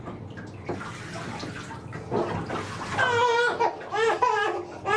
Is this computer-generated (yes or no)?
no